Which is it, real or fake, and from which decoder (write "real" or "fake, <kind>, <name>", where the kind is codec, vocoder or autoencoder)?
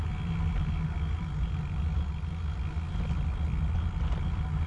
real